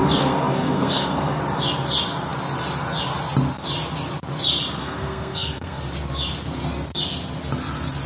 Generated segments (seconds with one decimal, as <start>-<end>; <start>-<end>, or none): 0.0-1.4; 4.8-5.8